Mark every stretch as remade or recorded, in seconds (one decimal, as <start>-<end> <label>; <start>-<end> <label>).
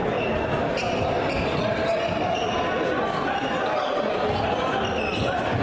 0.0-5.6 recorded